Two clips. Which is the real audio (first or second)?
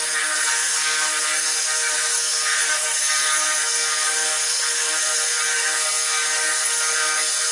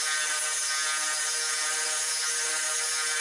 second